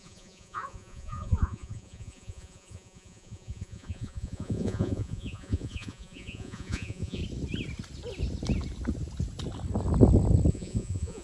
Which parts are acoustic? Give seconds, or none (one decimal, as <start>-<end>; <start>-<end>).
7.2-10.5